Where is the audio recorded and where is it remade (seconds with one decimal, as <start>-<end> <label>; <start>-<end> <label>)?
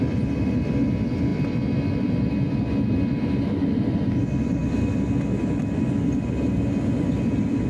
0.0-7.7 recorded